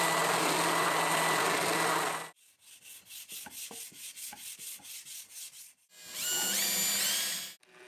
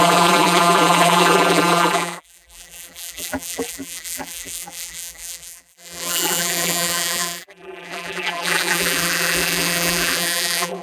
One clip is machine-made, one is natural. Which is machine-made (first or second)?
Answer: second